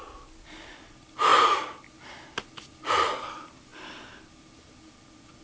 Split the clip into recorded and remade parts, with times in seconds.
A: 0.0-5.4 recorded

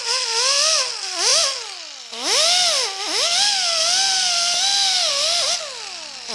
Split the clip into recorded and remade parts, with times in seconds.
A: 0.0-6.3 recorded

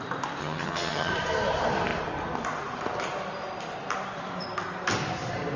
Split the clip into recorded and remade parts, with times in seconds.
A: 0.0-0.4 recorded; 0.4-1.1 remade; 1.1-5.6 recorded

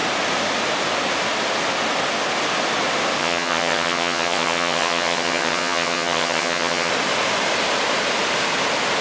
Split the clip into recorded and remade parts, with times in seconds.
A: 0.0-3.2 recorded; 3.2-6.9 remade; 6.9-9.0 recorded

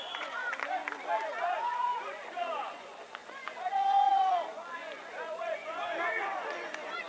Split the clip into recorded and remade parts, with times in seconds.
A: 0.0-0.8 remade; 0.8-1.4 recorded; 1.4-7.1 remade

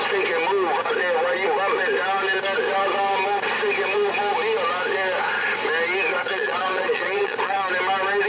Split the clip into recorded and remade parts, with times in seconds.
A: 0.0-6.1 recorded; 6.1-7.7 remade; 7.7-8.3 recorded